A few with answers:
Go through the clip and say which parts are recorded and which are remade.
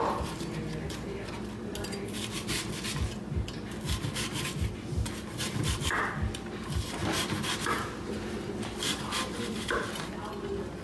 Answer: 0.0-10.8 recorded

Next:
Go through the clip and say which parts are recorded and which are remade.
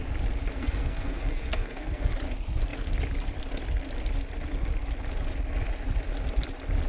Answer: 0.0-0.5 recorded; 0.5-2.1 remade; 2.1-6.9 recorded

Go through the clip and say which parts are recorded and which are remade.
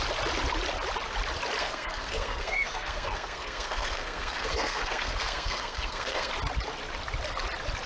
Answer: 0.0-1.6 recorded; 1.6-6.3 remade; 6.3-7.9 recorded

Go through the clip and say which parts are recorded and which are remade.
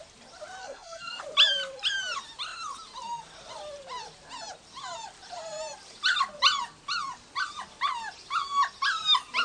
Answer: 0.0-0.6 recorded; 0.6-1.2 remade; 1.2-9.4 recorded